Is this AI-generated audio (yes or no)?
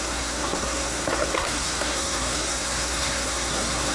yes